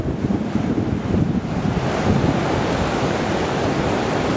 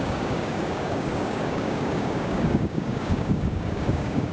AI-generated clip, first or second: second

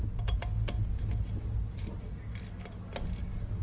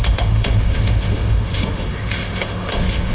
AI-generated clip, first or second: second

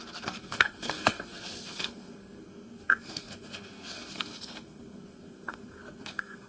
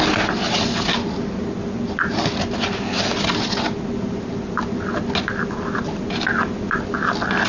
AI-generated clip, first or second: first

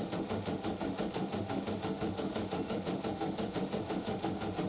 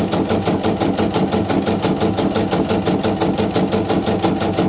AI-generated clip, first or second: first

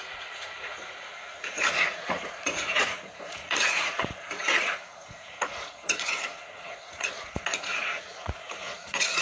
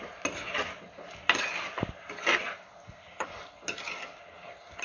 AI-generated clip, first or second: first